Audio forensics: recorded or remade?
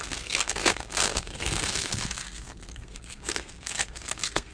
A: remade